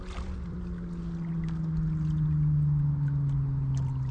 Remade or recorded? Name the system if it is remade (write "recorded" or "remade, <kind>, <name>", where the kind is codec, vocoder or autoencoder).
recorded